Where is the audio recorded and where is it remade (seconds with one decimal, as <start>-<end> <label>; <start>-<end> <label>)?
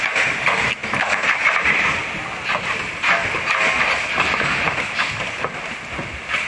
0.0-6.5 recorded